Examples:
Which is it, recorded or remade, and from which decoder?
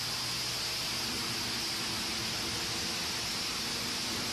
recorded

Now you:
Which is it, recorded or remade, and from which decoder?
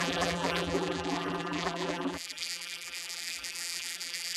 remade, vocoder, BigVGAN v2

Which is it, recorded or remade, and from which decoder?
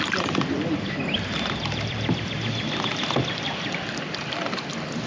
remade, vocoder, BigVGAN v2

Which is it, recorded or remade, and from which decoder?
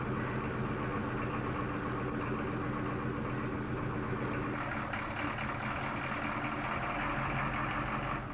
recorded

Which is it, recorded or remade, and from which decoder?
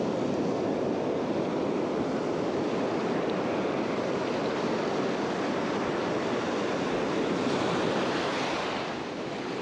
recorded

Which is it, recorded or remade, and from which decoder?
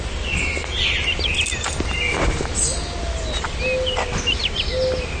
recorded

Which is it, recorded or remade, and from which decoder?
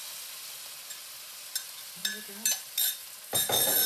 recorded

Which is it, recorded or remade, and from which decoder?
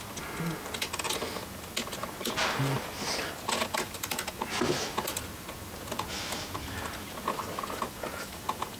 remade, vocoder, BigVGAN v2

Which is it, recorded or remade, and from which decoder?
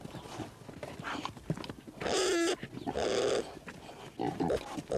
recorded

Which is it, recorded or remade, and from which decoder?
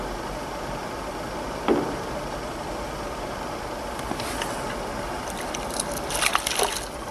recorded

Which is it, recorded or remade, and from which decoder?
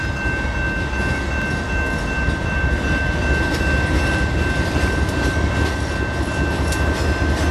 recorded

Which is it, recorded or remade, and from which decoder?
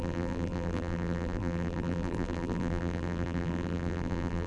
remade, vocoder, BigVGAN v2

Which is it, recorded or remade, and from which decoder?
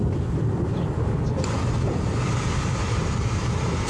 remade, vocoder, BigVGAN v2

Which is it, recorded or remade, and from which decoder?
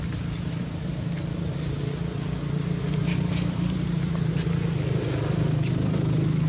remade, vocoder, BigVGAN v2